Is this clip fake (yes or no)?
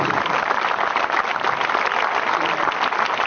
no